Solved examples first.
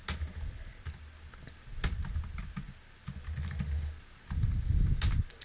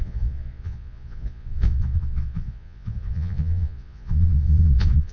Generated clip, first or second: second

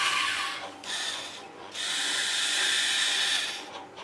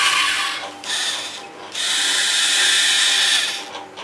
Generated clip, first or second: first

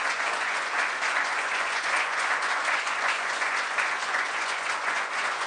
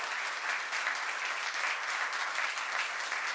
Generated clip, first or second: first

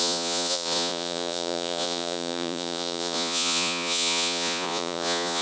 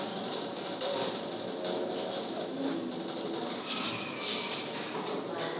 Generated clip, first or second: first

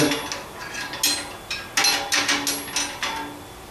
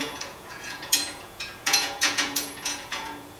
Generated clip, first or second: second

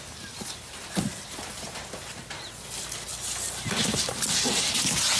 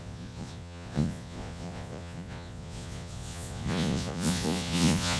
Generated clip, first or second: second